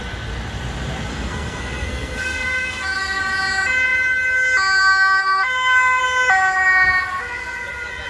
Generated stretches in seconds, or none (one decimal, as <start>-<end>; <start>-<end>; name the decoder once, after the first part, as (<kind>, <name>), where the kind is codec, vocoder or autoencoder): 1.1-3.2 (codec, SNAC); 5.2-6.0